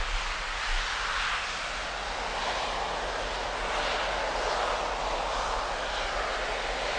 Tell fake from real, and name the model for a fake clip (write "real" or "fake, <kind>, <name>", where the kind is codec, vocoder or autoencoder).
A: real